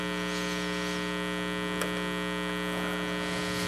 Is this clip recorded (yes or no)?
yes